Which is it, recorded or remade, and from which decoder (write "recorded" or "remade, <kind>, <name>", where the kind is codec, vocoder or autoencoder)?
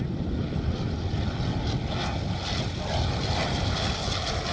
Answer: remade, vocoder, BigVGAN v2